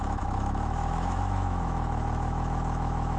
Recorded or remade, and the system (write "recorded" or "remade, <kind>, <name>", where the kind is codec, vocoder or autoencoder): remade, autoencoder, DAC-VAE